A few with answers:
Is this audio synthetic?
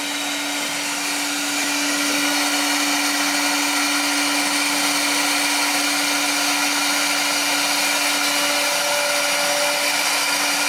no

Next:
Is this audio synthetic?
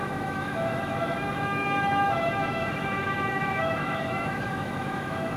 yes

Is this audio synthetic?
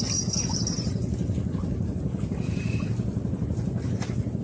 no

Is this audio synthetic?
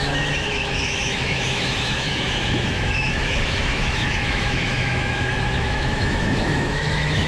yes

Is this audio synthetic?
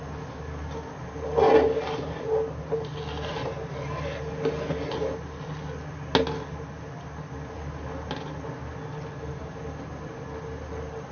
no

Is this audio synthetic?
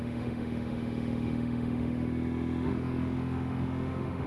yes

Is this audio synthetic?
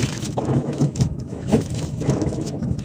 yes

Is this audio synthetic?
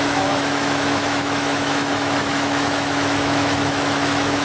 yes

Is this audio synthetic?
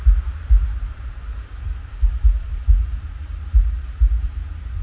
no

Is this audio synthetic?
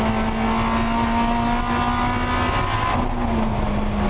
no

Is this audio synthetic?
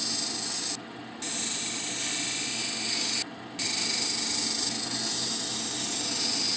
no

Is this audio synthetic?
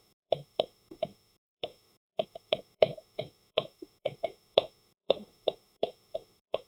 yes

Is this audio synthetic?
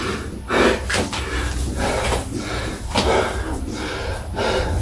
no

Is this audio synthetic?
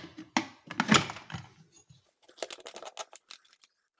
no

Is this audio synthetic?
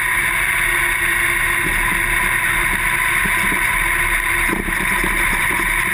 no